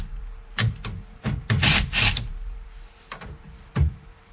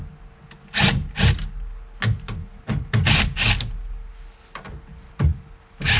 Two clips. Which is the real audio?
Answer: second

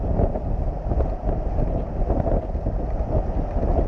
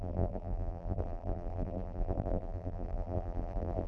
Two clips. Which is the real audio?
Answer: first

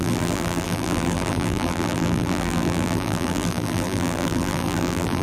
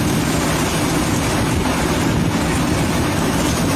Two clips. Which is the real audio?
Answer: second